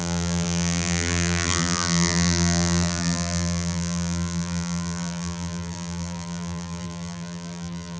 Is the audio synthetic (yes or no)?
yes